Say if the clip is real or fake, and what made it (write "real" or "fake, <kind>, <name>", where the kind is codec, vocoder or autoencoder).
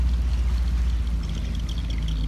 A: real